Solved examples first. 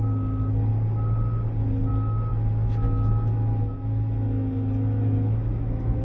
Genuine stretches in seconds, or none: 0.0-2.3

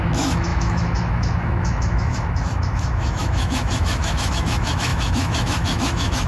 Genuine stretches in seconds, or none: none

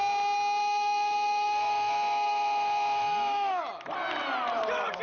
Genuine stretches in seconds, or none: 0.0-0.6; 3.6-5.0

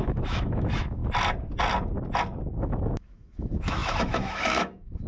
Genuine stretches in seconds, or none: 1.0-2.6

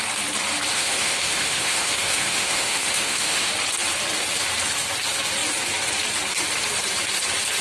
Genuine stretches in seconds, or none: 0.0-0.7; 3.5-7.6

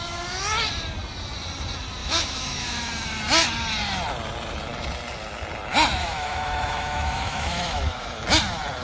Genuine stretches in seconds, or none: 0.0-2.0; 2.9-6.0; 8.2-8.8